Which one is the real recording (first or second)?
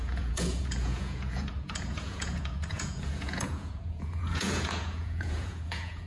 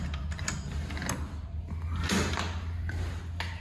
second